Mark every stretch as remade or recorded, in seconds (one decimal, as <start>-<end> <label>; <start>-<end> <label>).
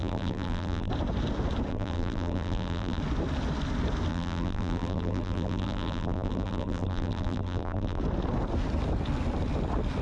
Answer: 0.0-0.9 remade; 0.9-1.7 recorded; 1.7-3.0 remade; 3.0-4.1 recorded; 4.1-8.0 remade; 8.0-10.0 recorded